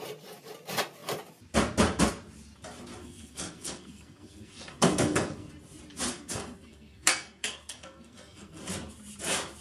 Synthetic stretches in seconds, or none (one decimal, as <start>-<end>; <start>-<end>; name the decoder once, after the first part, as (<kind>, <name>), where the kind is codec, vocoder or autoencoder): 3.0-5.5 (codec, SNAC); 6.1-8.6